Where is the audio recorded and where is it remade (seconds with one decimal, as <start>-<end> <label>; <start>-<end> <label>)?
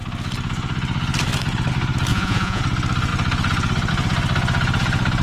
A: 0.0-2.1 recorded; 2.1-2.6 remade; 2.6-5.2 recorded